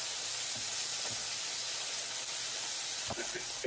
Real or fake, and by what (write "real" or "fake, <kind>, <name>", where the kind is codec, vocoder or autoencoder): real